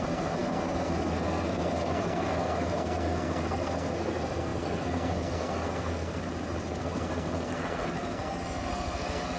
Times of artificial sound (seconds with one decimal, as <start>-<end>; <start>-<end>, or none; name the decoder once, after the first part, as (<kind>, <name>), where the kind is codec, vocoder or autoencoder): 0.0-6.2 (codec, SNAC); 6.8-9.4